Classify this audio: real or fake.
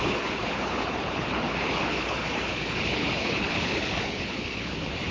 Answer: fake